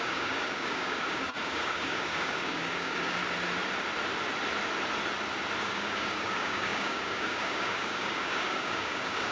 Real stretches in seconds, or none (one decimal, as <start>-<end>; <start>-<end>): 3.2-5.6

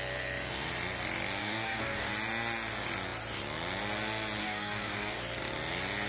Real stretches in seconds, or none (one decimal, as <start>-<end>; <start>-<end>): 0.0-1.4; 2.1-4.4; 5.2-6.1

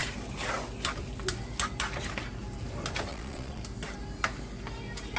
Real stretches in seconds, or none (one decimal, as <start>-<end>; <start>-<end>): 0.0-3.1; 3.6-5.2

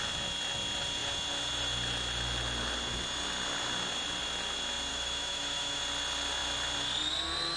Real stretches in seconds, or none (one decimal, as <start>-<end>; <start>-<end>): 0.0-4.9; 5.8-7.6

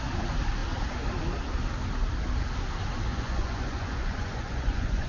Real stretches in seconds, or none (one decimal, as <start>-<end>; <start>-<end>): 0.0-3.1

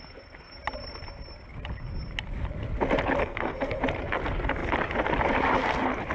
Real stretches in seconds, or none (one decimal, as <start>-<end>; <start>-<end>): 0.0-3.2; 3.8-6.1

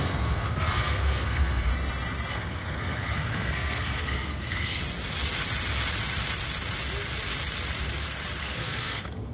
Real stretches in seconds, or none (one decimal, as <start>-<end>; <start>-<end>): 1.7-2.3; 4.8-8.4